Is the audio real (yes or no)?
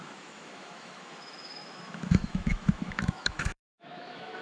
no